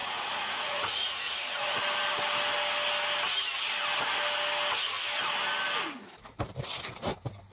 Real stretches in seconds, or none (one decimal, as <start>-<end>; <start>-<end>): 1.8-7.5